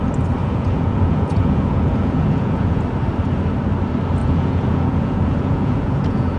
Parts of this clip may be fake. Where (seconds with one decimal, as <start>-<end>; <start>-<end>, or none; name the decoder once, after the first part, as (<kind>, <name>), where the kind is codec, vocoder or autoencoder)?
0.4-2.8 (vocoder, Vocos); 4.2-6.4